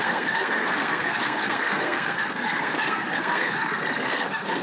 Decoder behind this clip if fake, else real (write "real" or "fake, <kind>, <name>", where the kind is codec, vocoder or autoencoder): fake, codec, SNAC